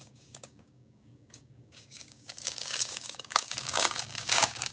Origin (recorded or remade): remade